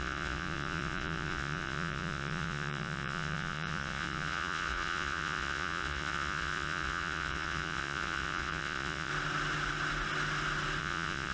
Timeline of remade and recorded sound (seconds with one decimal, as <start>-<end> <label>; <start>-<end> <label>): 0.0-9.1 remade; 9.1-10.8 recorded; 10.8-11.3 remade